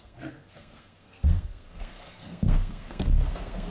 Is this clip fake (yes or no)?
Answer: yes